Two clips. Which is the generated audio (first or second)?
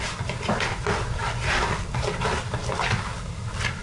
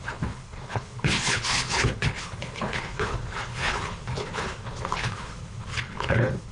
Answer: second